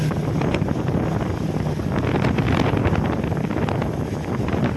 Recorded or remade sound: recorded